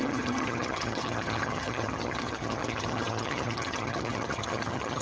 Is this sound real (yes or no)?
no